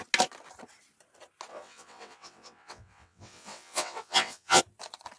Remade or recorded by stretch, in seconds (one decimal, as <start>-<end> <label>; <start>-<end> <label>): 0.0-1.5 recorded; 1.5-4.6 remade; 4.6-5.2 recorded